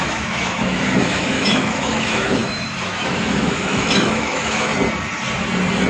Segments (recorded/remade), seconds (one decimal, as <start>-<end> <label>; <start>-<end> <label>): 0.0-4.7 remade; 4.7-5.9 recorded